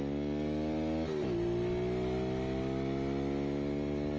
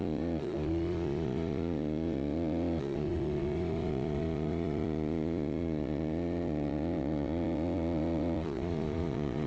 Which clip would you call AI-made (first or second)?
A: second